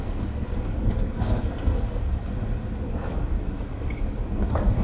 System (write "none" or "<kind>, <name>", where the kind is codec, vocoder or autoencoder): codec, SNAC